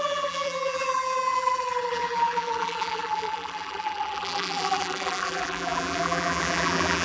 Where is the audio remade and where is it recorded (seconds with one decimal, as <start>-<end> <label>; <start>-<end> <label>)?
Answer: 0.0-7.0 remade